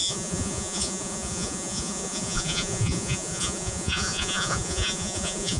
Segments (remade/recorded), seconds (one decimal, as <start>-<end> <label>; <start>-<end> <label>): 0.0-5.6 remade